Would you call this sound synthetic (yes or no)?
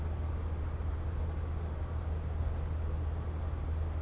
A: no